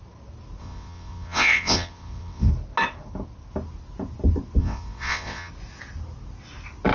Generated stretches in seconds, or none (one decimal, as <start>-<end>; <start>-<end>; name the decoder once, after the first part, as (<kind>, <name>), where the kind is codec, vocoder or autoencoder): 0.6-2.5 (vocoder, WaveNeXt); 4.6-5.5